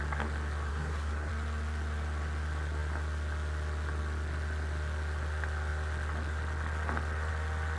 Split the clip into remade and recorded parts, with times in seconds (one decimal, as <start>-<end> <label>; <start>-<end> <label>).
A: 0.0-0.7 recorded; 0.7-1.3 remade; 1.3-7.8 recorded